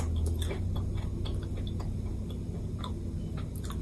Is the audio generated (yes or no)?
no